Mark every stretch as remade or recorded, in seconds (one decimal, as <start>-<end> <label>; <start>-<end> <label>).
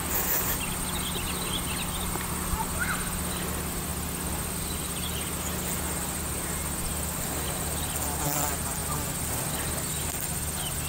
0.0-10.9 recorded